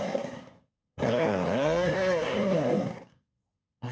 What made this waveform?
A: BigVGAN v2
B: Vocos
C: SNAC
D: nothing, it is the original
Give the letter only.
C